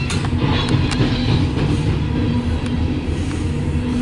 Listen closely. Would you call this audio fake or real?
real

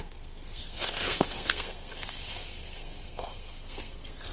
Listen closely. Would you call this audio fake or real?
fake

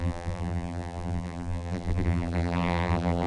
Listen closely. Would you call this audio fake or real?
fake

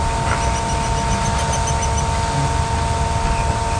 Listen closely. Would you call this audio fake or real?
real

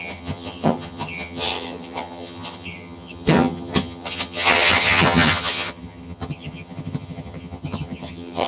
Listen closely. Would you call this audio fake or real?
fake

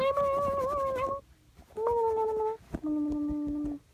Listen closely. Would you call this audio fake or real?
real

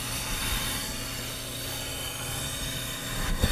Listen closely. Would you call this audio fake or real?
real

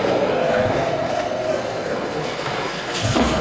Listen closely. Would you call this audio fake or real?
fake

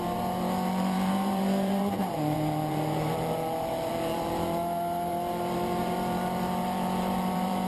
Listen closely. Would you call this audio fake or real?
fake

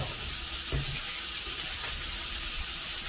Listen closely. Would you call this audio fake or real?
real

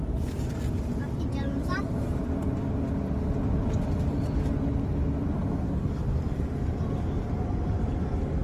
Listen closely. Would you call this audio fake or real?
real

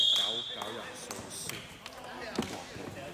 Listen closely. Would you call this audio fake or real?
real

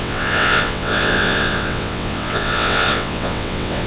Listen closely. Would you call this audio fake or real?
fake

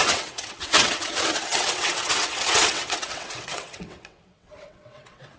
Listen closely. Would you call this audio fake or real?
fake